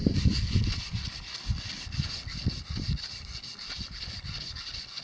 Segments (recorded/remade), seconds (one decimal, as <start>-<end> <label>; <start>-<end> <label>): 0.0-5.0 recorded